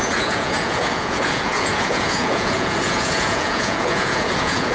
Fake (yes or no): yes